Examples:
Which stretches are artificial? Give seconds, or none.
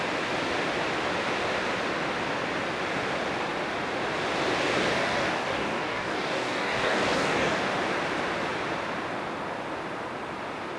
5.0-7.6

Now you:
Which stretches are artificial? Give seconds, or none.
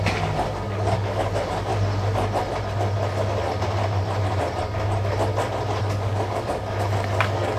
0.0-1.7; 5.8-7.6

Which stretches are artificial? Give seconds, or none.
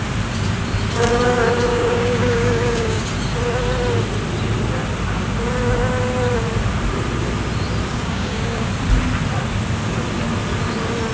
1.7-3.0; 7.9-8.7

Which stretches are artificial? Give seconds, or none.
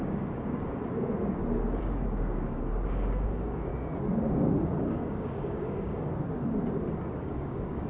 0.0-0.8; 1.8-3.7; 4.8-6.1; 7.1-7.9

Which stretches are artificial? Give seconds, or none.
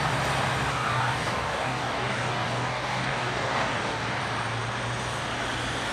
0.7-4.2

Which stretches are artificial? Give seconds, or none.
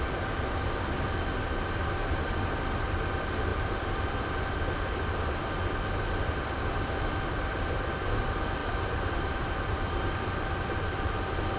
none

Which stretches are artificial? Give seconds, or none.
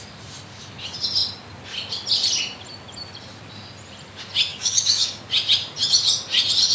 4.5-5.2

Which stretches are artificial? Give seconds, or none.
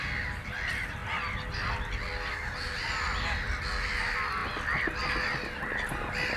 none